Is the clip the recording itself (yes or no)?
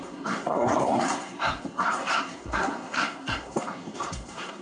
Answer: no